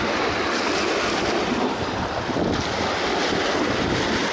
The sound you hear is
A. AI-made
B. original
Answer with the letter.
B